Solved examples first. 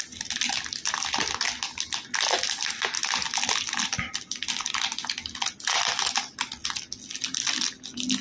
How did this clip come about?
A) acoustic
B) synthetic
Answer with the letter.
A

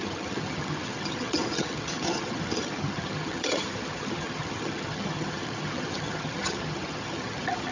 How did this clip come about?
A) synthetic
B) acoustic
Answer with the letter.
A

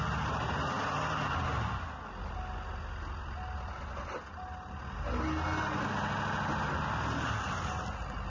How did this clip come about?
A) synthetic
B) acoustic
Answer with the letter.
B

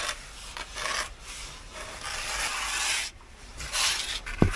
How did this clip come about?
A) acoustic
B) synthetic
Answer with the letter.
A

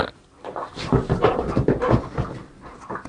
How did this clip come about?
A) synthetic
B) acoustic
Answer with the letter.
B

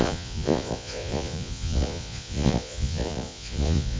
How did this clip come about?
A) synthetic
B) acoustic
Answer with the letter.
A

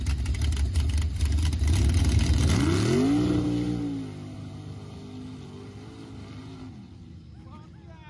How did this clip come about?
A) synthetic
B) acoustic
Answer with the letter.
B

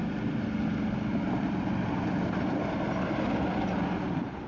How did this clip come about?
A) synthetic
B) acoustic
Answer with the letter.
B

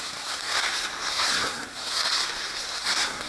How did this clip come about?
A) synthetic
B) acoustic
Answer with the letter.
A